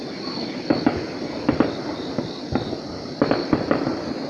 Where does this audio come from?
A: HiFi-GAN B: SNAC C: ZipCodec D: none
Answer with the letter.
D